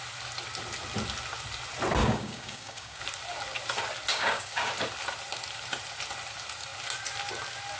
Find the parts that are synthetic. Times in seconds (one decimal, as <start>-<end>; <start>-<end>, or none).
2.0-3.0; 4.1-4.7